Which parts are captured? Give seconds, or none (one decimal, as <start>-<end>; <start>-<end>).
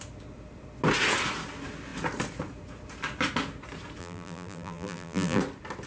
0.0-4.0; 5.4-5.9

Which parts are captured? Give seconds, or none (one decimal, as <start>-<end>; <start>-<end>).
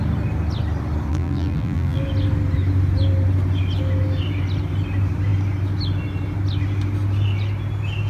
0.0-1.1; 2.0-8.1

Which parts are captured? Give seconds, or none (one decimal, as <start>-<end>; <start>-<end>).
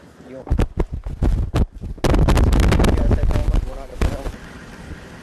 0.0-1.0; 1.9-5.2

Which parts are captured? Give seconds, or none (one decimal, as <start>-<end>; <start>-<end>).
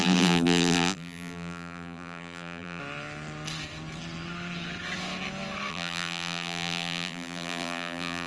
2.8-5.7